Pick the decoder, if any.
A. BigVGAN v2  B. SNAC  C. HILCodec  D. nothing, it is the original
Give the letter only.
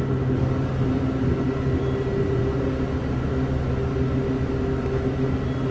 D